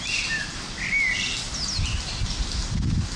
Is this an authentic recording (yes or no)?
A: yes